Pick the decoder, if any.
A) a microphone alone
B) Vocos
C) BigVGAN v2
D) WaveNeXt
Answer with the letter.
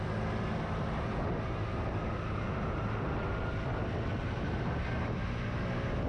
A